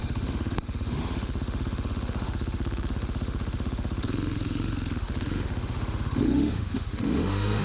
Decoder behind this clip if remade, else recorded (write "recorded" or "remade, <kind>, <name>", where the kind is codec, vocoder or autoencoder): remade, autoencoder, DAC-VAE